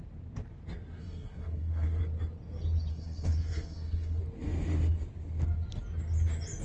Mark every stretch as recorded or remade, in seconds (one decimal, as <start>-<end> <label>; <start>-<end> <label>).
0.0-1.0 recorded; 1.0-2.0 remade; 2.0-2.9 recorded; 2.9-4.2 remade; 4.2-6.6 recorded

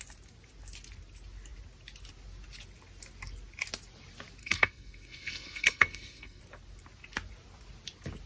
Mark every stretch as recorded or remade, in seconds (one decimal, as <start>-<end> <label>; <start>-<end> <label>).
0.0-4.4 recorded; 4.4-6.4 remade; 6.4-8.3 recorded

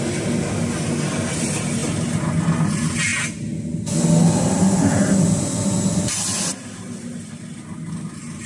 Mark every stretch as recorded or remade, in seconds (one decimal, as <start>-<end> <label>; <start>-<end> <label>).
0.0-8.5 recorded

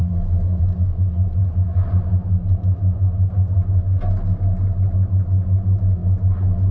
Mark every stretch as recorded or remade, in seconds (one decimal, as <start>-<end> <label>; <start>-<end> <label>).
0.0-0.6 remade; 0.6-6.7 recorded

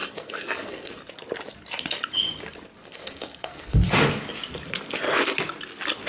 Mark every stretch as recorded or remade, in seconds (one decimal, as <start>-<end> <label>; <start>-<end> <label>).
0.0-0.9 remade; 0.9-2.8 recorded; 2.8-3.9 remade; 3.9-6.1 recorded